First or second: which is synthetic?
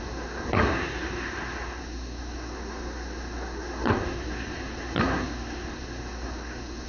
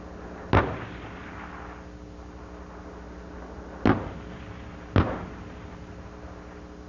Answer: first